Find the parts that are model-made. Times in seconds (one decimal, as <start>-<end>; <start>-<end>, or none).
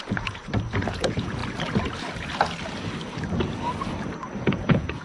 0.0-0.4; 0.9-1.4; 4.4-5.0